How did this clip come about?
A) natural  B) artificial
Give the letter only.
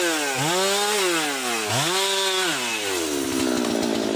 A